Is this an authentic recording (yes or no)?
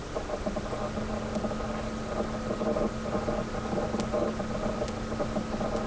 yes